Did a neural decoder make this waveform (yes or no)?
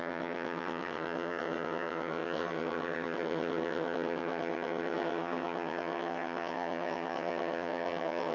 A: yes